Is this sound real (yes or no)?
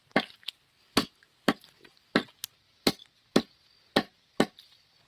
yes